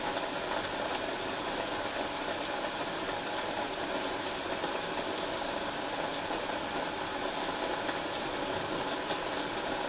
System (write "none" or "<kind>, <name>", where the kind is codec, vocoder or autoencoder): none